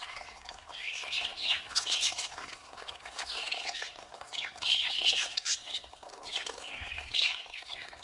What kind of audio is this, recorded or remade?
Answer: remade